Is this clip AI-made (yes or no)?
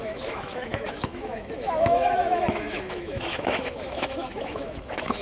yes